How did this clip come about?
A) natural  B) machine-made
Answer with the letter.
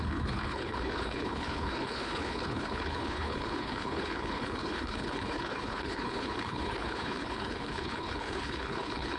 B